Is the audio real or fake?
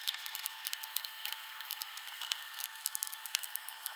fake